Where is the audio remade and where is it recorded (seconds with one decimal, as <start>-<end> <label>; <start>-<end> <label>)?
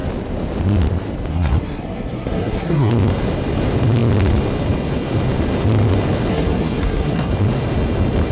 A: 0.0-1.3 recorded; 1.3-2.9 remade; 2.9-6.3 recorded; 6.3-7.3 remade; 7.3-8.3 recorded